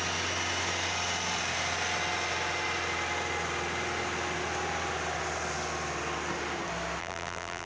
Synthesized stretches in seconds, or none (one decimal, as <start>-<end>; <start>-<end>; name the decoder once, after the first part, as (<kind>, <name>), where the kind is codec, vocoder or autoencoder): 7.0-7.7 (vocoder, BigVGAN v2)